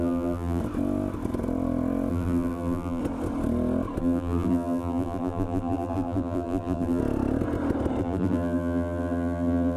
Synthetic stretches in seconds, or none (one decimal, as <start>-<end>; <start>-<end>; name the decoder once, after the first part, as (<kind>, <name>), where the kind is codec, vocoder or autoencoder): 0.0-0.6 (vocoder, BigVGAN v2); 2.1-3.0; 4.0-7.0; 8.0-9.8